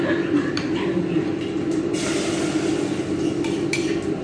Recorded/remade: recorded